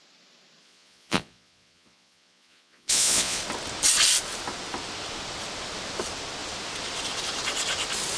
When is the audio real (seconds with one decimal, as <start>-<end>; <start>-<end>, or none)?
0.0-0.6; 3.4-8.2